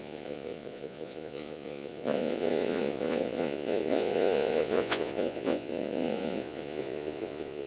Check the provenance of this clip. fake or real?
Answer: fake